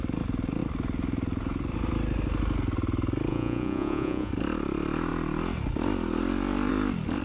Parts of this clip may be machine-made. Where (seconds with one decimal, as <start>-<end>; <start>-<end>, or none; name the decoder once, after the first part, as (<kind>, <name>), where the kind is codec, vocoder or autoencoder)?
3.3-4.3 (vocoder, Vocos)